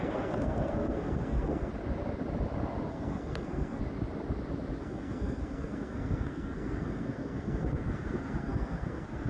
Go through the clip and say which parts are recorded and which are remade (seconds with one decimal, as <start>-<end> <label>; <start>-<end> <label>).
0.0-1.7 remade; 1.7-2.9 recorded; 2.9-3.8 remade; 3.8-4.8 recorded; 4.8-9.3 remade